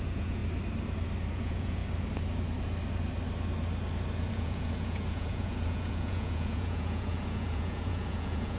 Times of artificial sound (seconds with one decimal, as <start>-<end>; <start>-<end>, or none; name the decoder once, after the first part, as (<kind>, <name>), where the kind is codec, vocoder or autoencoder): 0.0-0.4 (vocoder, Vocos); 1.3-1.8; 4.3-8.6